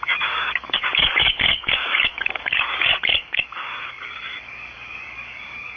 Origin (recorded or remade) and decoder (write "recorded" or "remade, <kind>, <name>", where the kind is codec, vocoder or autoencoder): remade, codec, DAC